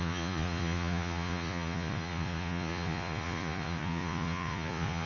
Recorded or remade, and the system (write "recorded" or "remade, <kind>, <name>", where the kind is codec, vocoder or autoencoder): remade, vocoder, Vocos